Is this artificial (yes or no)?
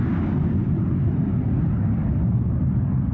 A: no